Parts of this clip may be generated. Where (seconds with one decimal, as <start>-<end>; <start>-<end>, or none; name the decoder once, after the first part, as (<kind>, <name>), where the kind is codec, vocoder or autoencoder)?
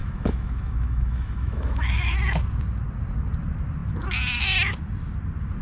0.0-2.1 (autoencoder, DAC-VAE)